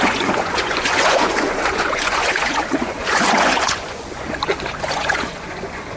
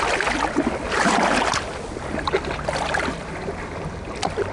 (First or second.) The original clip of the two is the second